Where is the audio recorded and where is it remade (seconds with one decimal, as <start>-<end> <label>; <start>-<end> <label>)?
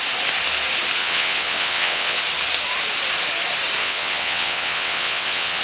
0.0-1.0 recorded; 1.0-2.2 remade; 2.2-3.8 recorded; 3.8-5.6 remade